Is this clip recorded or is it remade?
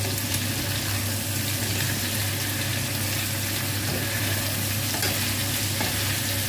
recorded